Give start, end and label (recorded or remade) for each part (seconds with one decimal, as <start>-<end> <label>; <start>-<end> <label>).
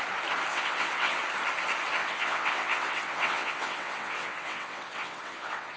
0.0-0.5 recorded; 0.5-1.2 remade; 1.2-2.0 recorded; 2.0-5.8 remade